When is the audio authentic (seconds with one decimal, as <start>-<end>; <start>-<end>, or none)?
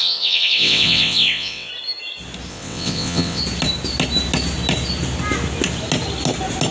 1.7-2.5; 3.4-6.7